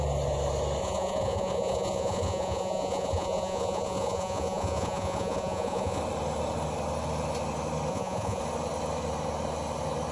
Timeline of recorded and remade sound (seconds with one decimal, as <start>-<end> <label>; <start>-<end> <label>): 0.0-0.8 recorded; 0.8-6.0 remade; 6.0-7.9 recorded; 7.9-8.4 remade; 8.4-10.1 recorded